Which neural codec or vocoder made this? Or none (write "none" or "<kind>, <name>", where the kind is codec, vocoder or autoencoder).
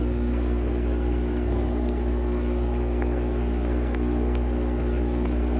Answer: codec, SNAC